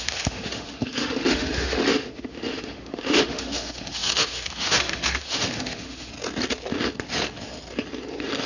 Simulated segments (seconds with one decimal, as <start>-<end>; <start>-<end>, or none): 0.0-6.1